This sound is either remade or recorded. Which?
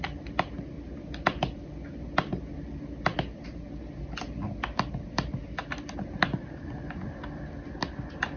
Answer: recorded